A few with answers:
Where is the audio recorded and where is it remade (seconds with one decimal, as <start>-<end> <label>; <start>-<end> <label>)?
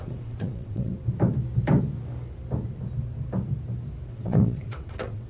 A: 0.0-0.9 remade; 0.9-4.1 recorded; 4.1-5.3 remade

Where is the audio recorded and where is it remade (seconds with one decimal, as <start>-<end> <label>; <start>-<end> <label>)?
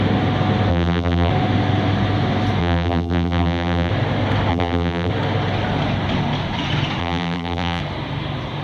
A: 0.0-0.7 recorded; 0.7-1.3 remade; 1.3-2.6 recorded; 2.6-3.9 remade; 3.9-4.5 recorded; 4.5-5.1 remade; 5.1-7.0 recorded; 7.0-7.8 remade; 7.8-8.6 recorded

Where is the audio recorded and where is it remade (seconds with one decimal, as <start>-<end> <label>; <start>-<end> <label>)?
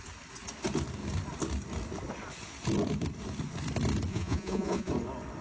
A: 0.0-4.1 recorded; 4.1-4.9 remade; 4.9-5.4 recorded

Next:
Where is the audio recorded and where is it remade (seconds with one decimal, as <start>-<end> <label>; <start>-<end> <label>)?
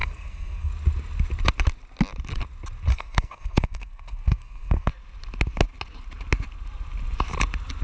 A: 0.0-0.7 remade; 0.7-2.9 recorded; 2.9-4.9 remade; 4.9-7.8 recorded